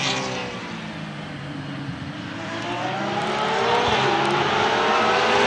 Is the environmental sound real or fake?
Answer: real